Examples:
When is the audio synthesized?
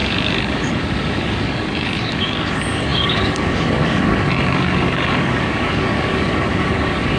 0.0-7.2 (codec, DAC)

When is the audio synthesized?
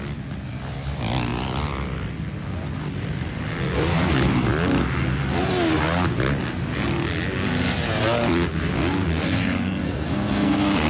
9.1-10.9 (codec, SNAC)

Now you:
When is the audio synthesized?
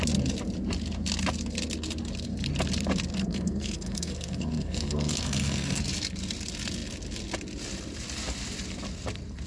3.1-5.8 (codec, SNAC)